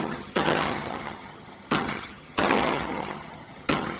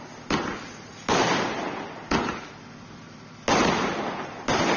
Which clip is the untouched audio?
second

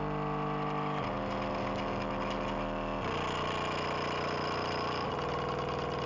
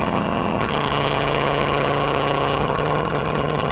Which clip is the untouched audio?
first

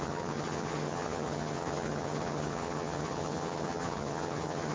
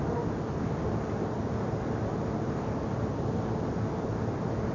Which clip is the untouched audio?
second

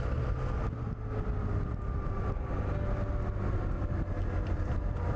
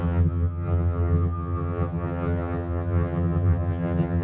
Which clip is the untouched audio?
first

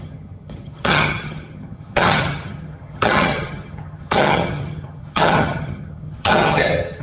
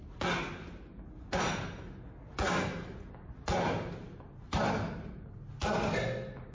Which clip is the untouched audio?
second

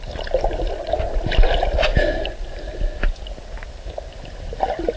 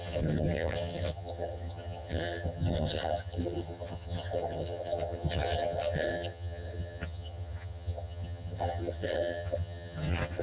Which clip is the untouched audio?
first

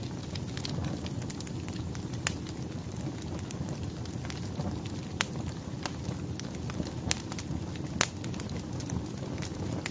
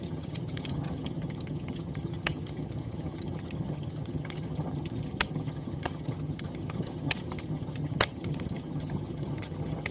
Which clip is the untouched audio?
first